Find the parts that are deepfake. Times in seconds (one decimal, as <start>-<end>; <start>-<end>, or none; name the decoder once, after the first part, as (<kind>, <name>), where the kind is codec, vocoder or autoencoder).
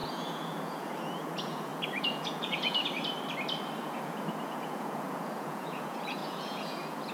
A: 0.0-2.8 (vocoder, Vocos); 3.8-7.1